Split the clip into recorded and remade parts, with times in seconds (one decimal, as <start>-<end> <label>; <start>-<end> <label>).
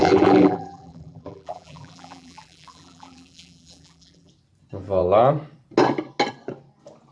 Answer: 0.0-4.3 remade; 4.3-7.1 recorded